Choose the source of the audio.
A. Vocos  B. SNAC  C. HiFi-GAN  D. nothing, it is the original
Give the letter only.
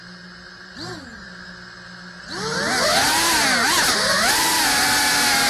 D